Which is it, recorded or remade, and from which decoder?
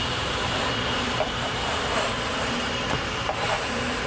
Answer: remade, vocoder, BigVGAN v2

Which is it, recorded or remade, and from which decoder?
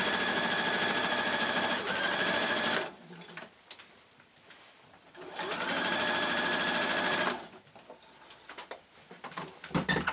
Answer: remade, vocoder, BigVGAN v2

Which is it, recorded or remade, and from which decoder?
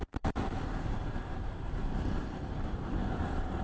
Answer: remade, vocoder, BigVGAN v2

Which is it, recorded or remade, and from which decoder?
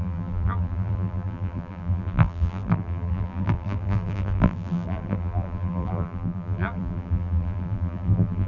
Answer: remade, vocoder, BigVGAN v2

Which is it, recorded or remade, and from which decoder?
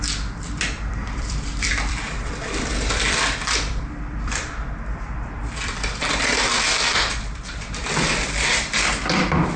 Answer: remade, vocoder, BigVGAN v2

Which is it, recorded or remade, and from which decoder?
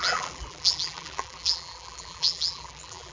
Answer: remade, vocoder, BigVGAN v2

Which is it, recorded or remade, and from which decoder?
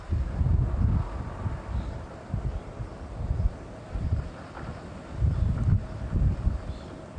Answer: recorded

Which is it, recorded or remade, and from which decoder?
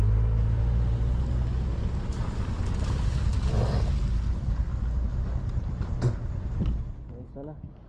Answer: recorded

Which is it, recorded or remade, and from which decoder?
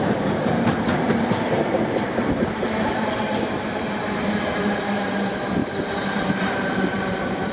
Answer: remade, vocoder, BigVGAN v2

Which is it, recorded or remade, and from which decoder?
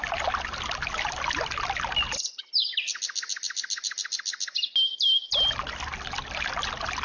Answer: recorded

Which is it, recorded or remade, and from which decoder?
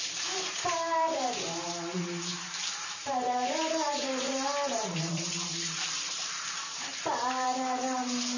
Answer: remade, vocoder, BigVGAN v2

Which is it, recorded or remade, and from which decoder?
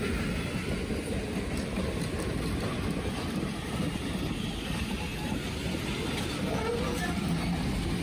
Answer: recorded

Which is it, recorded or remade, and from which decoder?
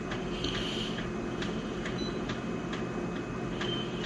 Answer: recorded